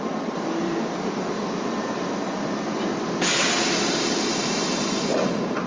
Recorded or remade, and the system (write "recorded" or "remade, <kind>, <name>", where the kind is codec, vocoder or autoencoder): recorded